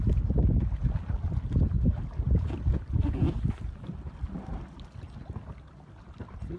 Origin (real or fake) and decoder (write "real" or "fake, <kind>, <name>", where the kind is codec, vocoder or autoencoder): real